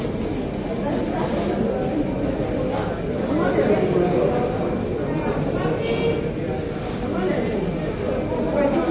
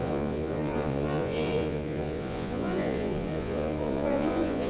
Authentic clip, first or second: first